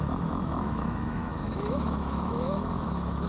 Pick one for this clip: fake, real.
fake